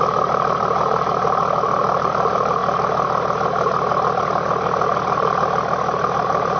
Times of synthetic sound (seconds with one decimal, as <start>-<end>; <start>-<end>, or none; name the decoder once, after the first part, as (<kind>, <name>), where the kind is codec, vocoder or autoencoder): 0.0-2.6 (vocoder, BigVGAN v2); 4.2-6.6